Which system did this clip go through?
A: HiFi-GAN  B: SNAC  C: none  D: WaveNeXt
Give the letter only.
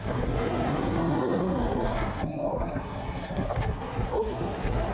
B